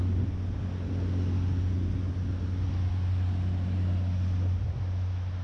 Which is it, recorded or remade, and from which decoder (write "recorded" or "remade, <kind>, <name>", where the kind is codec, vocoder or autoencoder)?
recorded